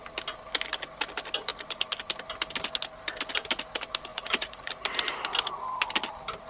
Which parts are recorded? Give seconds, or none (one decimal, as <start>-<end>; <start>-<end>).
0.0-4.1; 4.7-6.5